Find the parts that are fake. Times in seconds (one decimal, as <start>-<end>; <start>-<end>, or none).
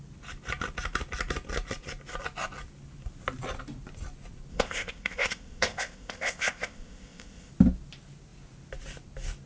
4.5-7.5